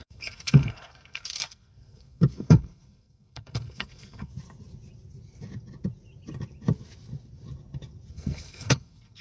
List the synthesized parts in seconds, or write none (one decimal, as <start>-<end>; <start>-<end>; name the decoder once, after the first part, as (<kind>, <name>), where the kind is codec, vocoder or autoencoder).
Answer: 0.0-4.3 (codec, SNAC); 8.1-9.2